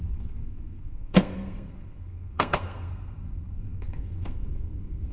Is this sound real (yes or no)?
no